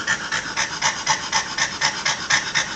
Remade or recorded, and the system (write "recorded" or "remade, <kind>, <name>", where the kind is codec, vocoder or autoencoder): recorded